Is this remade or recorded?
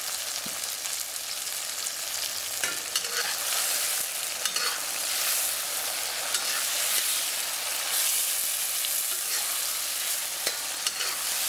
recorded